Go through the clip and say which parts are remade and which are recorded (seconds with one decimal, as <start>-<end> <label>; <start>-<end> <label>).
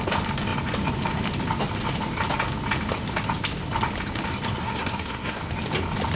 0.0-4.6 recorded; 4.6-5.4 remade; 5.4-6.2 recorded